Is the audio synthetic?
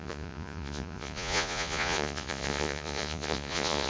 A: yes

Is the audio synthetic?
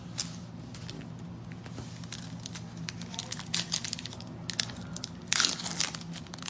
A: no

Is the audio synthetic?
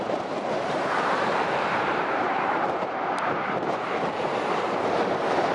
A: yes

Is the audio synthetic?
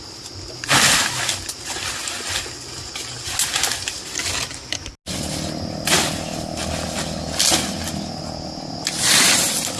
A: no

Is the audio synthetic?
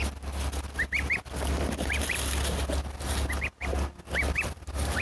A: no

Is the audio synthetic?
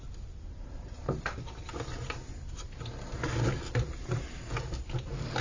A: no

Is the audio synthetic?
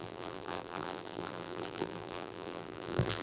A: yes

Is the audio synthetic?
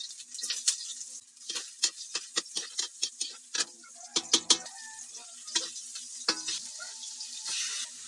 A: no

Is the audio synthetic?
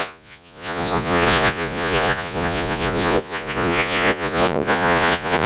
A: yes